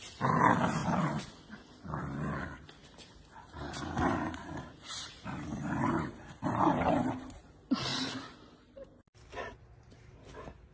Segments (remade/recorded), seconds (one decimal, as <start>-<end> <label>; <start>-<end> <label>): 0.0-0.8 recorded; 0.8-1.4 remade; 1.4-2.8 recorded; 2.8-7.1 remade; 7.1-10.7 recorded

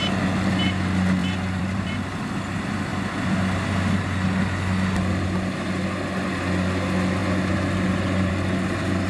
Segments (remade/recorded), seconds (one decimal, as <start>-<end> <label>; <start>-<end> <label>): 0.0-1.2 recorded; 1.2-1.9 remade; 1.9-9.1 recorded

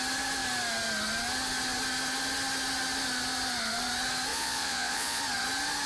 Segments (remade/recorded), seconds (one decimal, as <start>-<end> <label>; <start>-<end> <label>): 0.0-4.3 recorded; 4.3-5.2 remade; 5.2-5.9 recorded

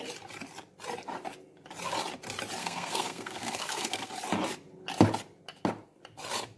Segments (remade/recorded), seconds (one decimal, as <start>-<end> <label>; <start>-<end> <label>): 0.0-2.6 recorded; 2.6-4.1 remade; 4.1-6.6 recorded

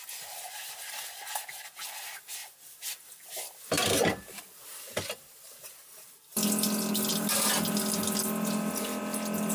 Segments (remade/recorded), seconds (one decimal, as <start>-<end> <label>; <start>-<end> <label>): 0.0-2.4 recorded; 2.4-4.0 remade; 4.0-9.5 recorded

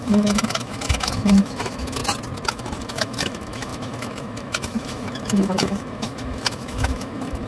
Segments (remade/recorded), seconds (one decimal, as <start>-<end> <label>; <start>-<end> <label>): 0.0-2.0 remade; 2.0-2.5 recorded; 2.5-7.5 remade